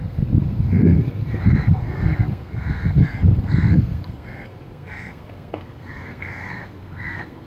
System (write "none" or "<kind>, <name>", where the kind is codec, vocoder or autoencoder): codec, SNAC